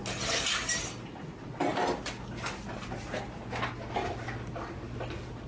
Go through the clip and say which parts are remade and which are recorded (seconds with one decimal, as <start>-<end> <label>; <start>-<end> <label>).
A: 0.0-5.5 recorded